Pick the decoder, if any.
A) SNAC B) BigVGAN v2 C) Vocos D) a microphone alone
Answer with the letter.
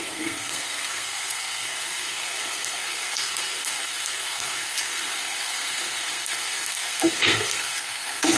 A